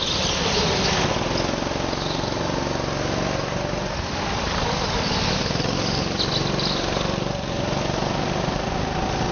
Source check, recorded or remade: recorded